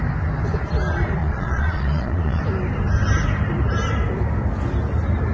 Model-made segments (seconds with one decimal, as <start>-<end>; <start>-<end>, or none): 1.2-2.4

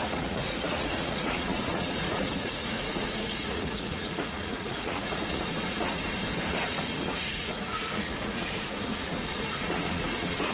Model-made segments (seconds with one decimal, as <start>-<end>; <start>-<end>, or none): 0.0-6.0; 6.5-10.5

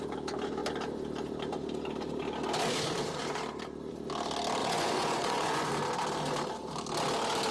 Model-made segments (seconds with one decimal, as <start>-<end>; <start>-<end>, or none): 4.6-5.7

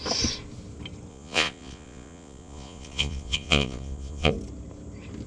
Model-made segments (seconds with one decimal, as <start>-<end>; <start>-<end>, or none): 1.1-4.3